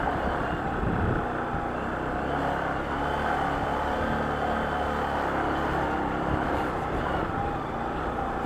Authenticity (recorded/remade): recorded